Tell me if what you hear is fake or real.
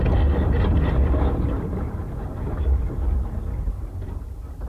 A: real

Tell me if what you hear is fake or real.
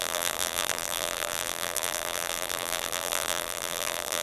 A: fake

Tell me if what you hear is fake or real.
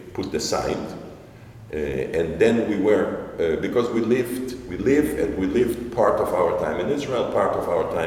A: fake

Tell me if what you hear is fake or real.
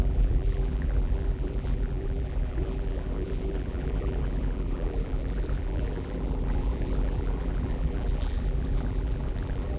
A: fake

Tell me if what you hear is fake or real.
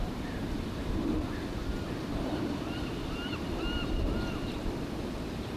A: fake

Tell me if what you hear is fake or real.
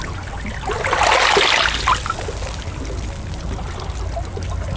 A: real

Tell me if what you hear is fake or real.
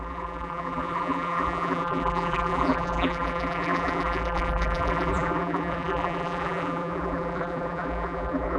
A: fake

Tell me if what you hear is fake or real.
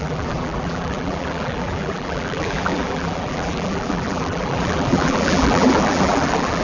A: fake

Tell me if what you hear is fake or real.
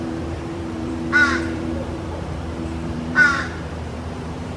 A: fake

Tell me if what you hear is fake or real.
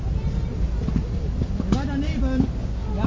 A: real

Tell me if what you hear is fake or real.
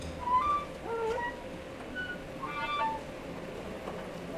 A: real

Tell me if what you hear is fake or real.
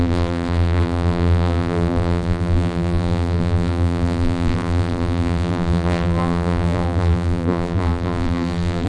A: fake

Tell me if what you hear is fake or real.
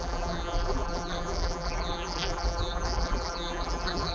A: fake